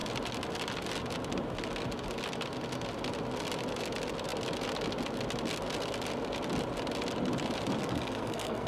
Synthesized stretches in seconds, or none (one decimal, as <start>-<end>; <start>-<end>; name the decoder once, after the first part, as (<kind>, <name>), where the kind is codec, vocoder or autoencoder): 7.8-8.7 (codec, SNAC)